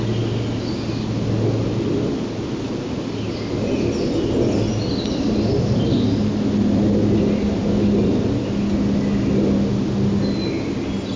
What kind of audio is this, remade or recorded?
recorded